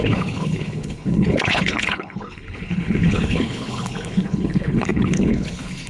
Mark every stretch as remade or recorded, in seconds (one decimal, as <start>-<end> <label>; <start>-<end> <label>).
0.0-5.9 remade